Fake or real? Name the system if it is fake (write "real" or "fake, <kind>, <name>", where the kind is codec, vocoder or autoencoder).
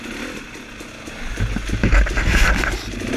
real